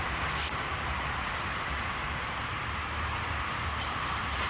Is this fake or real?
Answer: fake